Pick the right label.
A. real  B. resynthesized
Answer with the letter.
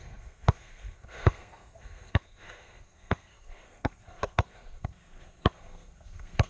B